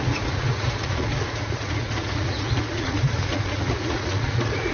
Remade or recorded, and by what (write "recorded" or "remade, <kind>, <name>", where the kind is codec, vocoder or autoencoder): remade, vocoder, Vocos